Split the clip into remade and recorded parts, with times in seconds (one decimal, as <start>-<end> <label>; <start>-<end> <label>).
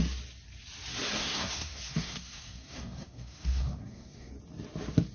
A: 0.0-1.2 recorded; 1.2-4.3 remade; 4.3-5.1 recorded